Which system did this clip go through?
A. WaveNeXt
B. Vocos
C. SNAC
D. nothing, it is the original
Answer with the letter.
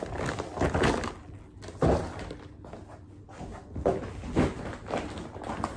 D